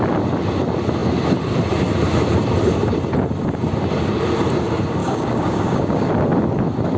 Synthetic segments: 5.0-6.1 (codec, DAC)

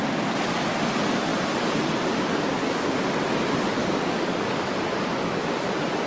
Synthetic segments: 3.8-5.5 (codec, DAC)